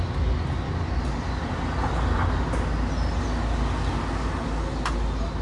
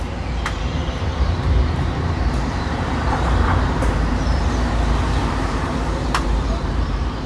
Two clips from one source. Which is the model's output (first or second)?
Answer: second